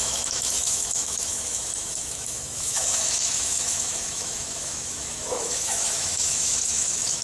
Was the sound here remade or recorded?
remade